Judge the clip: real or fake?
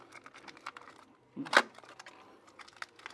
real